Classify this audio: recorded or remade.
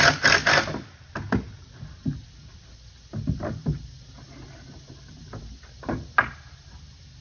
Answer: recorded